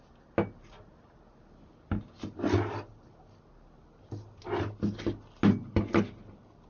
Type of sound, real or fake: real